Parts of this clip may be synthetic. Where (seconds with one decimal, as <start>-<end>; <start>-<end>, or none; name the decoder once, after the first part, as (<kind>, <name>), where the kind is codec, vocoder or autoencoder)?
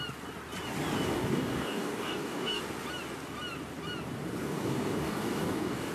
1.1-2.6 (codec, DAC); 4.4-5.9